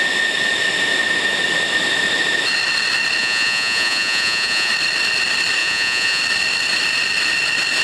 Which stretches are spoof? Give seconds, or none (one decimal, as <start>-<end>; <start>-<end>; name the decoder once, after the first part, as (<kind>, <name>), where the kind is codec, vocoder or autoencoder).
3.2-4.7 (vocoder, Vocos); 5.6-6.2